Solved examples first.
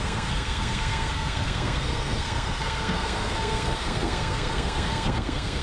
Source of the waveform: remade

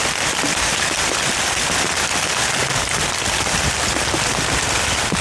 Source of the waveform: recorded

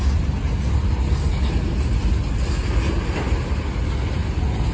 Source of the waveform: recorded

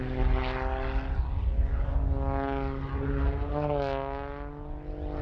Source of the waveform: recorded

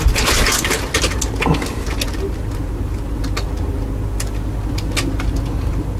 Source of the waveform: recorded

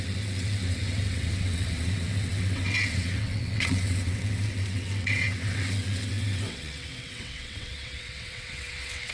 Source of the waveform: remade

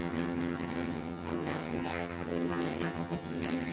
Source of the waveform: remade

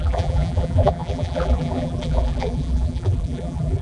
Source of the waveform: remade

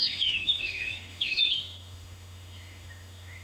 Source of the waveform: remade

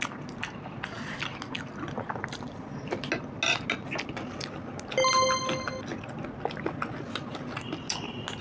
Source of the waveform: recorded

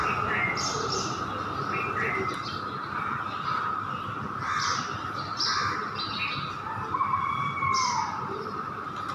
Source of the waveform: recorded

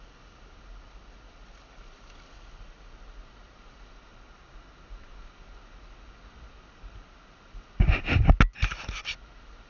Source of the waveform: recorded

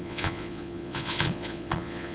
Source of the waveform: remade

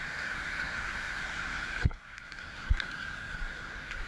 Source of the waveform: remade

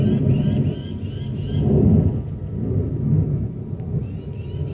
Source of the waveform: recorded